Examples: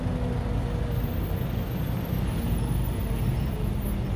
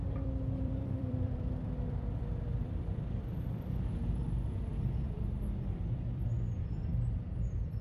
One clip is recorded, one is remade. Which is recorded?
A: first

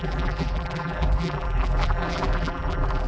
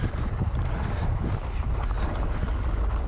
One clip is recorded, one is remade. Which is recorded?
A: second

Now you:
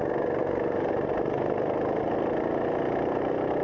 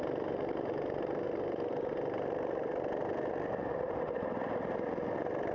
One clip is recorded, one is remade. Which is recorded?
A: first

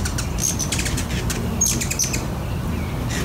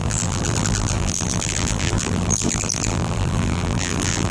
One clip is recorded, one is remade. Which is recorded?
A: first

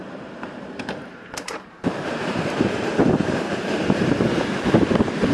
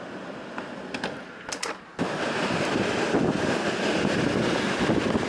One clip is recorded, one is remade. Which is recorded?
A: second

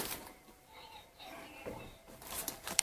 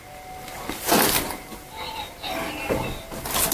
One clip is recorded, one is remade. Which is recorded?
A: second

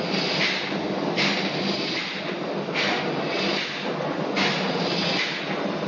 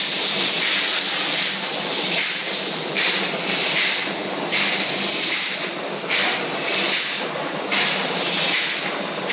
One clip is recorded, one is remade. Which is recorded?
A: first